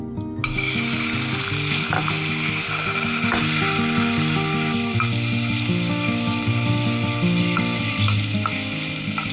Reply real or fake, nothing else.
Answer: real